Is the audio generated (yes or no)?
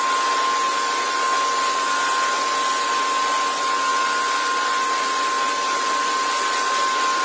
no